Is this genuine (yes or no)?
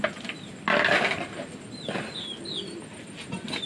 yes